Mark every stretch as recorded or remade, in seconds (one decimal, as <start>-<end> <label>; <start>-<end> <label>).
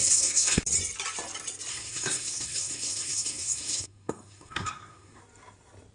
0.0-0.6 remade; 0.6-1.7 recorded; 1.7-5.2 remade; 5.2-5.9 recorded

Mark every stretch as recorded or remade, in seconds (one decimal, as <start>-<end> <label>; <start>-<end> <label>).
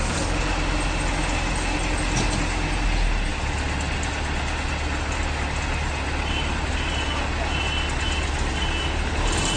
0.0-9.6 recorded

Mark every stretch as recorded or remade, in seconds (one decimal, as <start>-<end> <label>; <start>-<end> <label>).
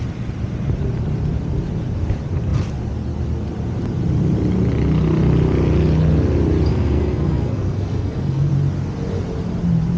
0.0-6.7 recorded; 6.7-8.5 remade; 8.5-10.0 recorded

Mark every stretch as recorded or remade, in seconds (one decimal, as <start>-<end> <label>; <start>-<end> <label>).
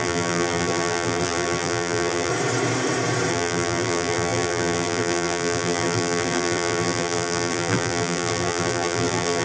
0.0-2.3 remade; 2.3-3.3 recorded; 3.3-9.4 remade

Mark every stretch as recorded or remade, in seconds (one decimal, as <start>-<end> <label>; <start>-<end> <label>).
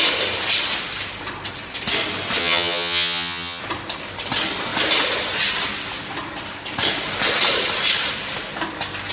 0.0-2.4 recorded; 2.4-3.6 remade; 3.6-9.1 recorded